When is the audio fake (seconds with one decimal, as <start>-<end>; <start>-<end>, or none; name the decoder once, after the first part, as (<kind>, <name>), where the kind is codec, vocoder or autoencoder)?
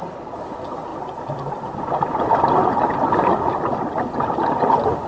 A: 0.9-4.0 (vocoder, BigVGAN v2)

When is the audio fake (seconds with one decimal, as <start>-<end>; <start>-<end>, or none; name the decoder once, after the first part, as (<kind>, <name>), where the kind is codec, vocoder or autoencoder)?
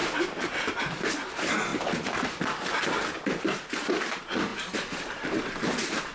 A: 0.0-1.7 (vocoder, BigVGAN v2); 4.1-4.5; 5.1-6.1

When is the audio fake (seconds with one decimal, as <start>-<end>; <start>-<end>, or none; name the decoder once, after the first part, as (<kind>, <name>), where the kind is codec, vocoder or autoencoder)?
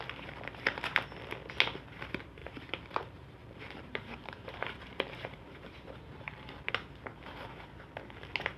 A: 2.4-6.7 (vocoder, BigVGAN v2)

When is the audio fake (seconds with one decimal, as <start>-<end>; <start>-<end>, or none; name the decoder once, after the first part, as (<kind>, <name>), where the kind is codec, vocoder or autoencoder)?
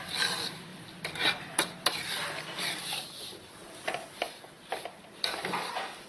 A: 0.0-6.1 (vocoder, BigVGAN v2)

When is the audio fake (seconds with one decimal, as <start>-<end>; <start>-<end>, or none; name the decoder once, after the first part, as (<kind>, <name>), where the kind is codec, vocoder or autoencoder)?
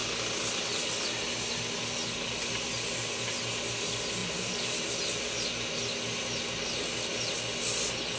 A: none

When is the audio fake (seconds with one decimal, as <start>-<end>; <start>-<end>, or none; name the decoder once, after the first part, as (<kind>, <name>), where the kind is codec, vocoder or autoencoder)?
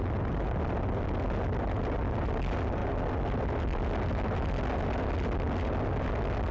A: none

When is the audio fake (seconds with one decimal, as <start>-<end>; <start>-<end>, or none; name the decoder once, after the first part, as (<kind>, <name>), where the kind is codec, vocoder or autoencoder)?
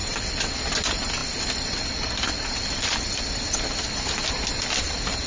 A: 0.0-0.5 (vocoder, BigVGAN v2)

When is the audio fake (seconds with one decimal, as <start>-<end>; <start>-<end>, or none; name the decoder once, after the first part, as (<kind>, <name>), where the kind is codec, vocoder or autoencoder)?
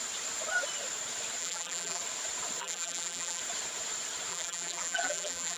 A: 1.4-2.0 (vocoder, BigVGAN v2); 2.6-3.4; 4.3-5.6